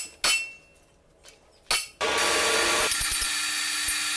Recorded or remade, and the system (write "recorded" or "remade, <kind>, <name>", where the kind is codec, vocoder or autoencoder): recorded